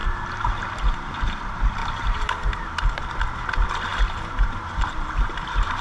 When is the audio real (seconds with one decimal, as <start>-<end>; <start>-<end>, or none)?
0.7-1.8; 3.1-3.9

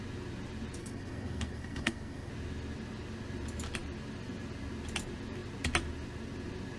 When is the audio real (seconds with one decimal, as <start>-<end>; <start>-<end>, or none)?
0.0-0.8; 2.3-6.8